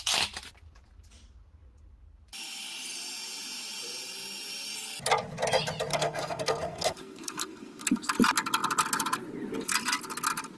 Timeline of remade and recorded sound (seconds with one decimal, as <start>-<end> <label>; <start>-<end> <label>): 0.0-5.9 recorded; 5.9-8.1 remade; 8.1-10.6 recorded